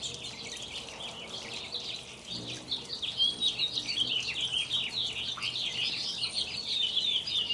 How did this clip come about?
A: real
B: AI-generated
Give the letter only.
A